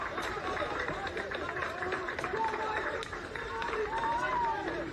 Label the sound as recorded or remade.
remade